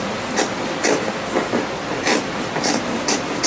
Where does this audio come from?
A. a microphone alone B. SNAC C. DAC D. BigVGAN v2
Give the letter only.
D